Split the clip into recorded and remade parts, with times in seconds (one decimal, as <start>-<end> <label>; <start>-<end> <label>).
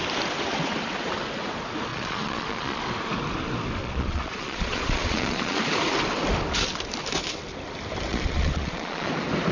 0.0-1.9 recorded; 1.9-2.8 remade; 2.8-3.8 recorded; 3.8-5.6 remade; 5.6-8.1 recorded; 8.1-9.1 remade; 9.1-9.5 recorded